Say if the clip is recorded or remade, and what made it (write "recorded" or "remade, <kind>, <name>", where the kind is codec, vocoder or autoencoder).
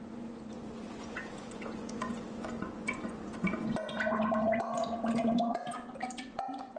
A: remade, vocoder, Vocos